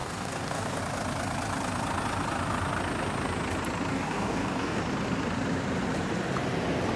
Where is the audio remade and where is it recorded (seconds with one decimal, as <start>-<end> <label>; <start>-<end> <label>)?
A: 0.0-0.8 remade; 0.8-3.9 recorded; 3.9-4.8 remade; 4.8-7.0 recorded